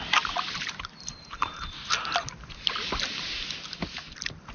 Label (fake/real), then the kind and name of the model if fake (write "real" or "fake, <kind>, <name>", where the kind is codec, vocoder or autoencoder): real